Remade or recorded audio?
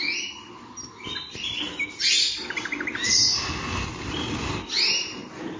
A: recorded